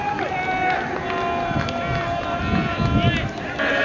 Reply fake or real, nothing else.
real